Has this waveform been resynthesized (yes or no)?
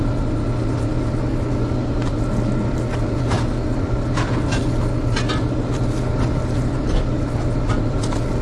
no